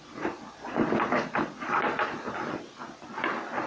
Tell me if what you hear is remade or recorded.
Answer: recorded